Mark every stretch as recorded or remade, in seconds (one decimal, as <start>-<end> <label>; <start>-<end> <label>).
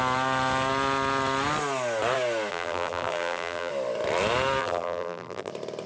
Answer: 0.0-2.5 recorded; 2.5-3.7 remade; 3.7-4.6 recorded; 4.6-5.5 remade; 5.5-5.9 recorded